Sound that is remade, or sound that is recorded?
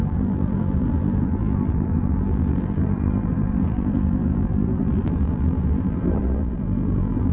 remade